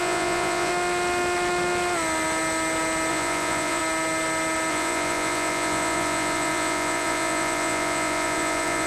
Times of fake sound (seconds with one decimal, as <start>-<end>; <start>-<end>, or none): 0.0-0.7; 3.1-3.8; 4.7-8.9